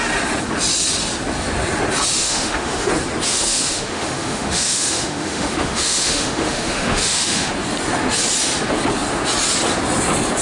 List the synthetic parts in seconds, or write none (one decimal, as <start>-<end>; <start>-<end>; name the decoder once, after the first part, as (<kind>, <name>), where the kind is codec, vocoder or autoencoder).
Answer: 2.2-2.9 (autoencoder, DAC-VAE); 3.3-7.5